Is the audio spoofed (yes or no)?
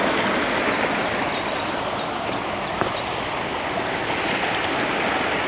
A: no